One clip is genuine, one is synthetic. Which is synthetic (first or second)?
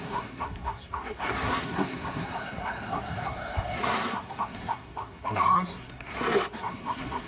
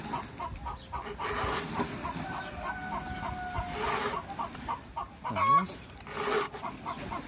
first